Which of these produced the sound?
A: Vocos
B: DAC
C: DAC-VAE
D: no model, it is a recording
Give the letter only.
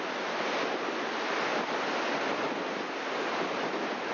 D